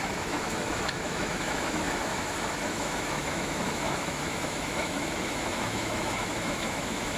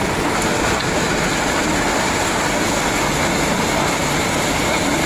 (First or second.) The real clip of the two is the second